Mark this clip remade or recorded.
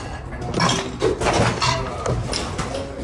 recorded